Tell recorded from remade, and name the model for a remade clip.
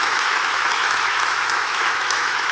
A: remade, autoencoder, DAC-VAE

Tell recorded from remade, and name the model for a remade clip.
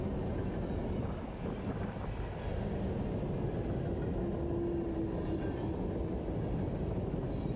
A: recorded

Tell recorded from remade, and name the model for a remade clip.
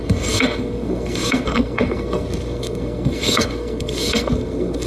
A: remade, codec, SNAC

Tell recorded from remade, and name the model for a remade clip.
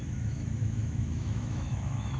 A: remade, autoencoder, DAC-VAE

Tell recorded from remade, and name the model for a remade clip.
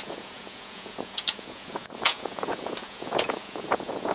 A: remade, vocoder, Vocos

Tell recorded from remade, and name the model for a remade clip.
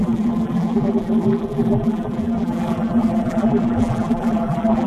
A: remade, vocoder, BigVGAN v2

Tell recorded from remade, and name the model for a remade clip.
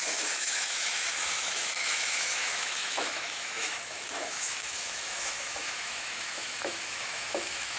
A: remade, autoencoder, DAC-VAE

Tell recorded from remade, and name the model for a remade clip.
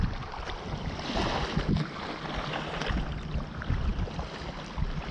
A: recorded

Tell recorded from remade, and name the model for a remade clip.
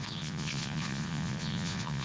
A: remade, vocoder, Vocos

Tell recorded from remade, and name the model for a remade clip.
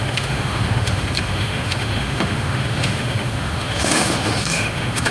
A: remade, autoencoder, DAC-VAE